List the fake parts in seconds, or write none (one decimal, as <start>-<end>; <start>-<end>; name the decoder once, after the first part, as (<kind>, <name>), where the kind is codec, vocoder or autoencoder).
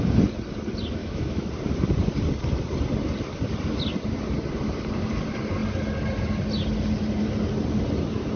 1.0-1.5 (autoencoder, DAC-VAE)